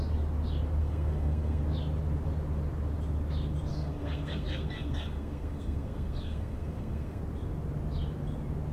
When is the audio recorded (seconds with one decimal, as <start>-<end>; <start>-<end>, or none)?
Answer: 0.0-0.8; 1.6-3.7; 7.2-8.7